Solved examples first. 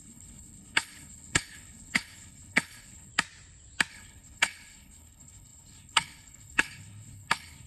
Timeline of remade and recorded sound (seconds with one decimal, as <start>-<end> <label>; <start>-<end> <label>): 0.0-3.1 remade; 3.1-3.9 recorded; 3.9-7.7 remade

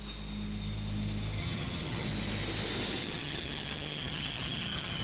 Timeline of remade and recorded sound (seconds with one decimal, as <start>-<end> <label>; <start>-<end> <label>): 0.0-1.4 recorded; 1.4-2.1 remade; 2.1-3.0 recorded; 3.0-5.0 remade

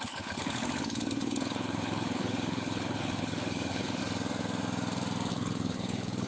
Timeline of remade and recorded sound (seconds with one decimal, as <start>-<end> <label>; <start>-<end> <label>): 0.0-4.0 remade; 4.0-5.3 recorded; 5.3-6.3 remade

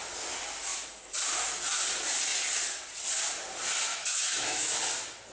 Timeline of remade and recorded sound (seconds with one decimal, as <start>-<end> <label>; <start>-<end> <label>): 0.0-3.9 recorded; 3.9-4.8 remade; 4.8-5.3 recorded